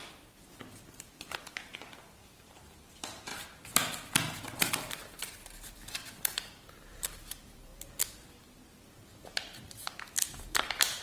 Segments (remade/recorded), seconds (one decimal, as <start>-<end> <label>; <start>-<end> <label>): 0.0-1.4 recorded; 1.4-3.3 remade; 3.3-4.7 recorded; 4.7-7.7 remade; 7.7-10.4 recorded; 10.4-11.0 remade